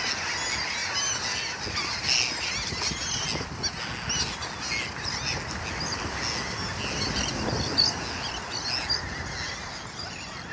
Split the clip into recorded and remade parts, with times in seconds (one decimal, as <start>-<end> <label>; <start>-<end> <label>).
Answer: 0.0-10.5 recorded